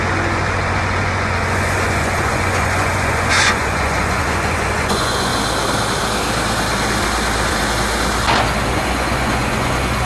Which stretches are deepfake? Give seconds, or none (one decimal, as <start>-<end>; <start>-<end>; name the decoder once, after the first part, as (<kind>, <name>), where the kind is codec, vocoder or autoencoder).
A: 0.0-5.3 (vocoder, Vocos); 8.7-10.1